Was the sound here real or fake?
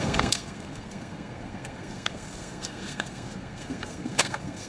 fake